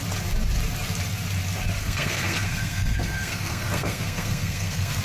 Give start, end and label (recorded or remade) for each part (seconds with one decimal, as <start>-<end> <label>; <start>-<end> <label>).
0.0-1.8 recorded; 1.8-5.0 remade